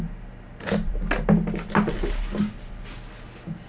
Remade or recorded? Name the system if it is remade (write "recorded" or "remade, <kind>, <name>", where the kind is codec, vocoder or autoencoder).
recorded